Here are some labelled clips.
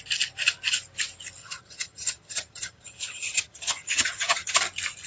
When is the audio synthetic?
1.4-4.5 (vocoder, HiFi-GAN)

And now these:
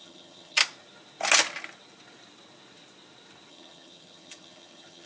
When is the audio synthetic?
0.0-0.6 (vocoder, HiFi-GAN); 3.5-5.1

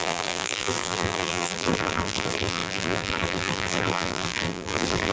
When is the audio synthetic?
0.0-5.1 (vocoder, BigVGAN v2)

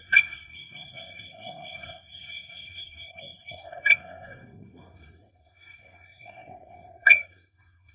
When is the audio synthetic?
0.0-7.9 (codec, SNAC)

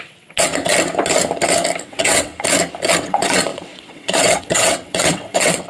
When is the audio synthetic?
0.0-0.5 (vocoder, WaveNeXt); 1.8-2.3; 3.0-5.7

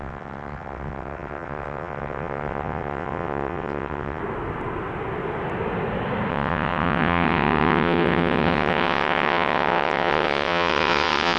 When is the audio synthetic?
0.0-4.2 (vocoder, WaveNeXt); 6.3-11.4

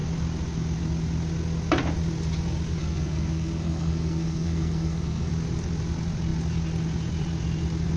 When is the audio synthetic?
2.8-5.3 (codec, SNAC)